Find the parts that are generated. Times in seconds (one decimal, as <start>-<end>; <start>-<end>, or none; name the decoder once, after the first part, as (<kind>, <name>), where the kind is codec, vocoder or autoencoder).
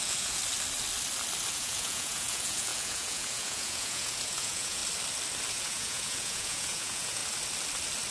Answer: 0.0-0.4 (vocoder, Vocos); 1.5-4.8; 5.5-7.2